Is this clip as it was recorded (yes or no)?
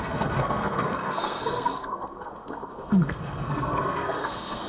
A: no